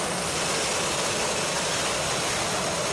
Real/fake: real